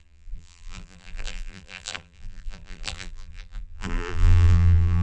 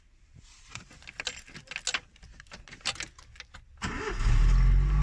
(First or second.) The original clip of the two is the second